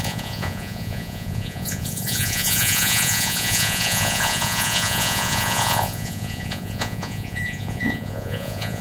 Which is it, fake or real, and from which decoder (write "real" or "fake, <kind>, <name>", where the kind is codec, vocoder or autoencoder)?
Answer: fake, vocoder, Vocos